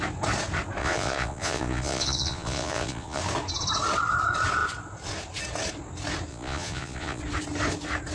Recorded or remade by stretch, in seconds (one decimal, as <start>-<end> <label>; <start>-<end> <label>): 0.0-0.8 recorded; 0.8-3.2 remade; 3.2-6.3 recorded; 6.3-7.2 remade; 7.2-8.1 recorded